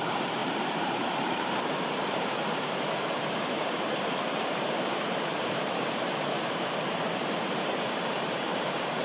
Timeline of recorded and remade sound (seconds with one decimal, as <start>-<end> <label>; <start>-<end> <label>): 0.0-9.0 remade